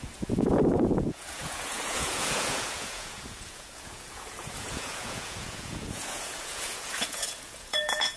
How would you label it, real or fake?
fake